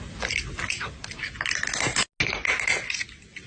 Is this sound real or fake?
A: real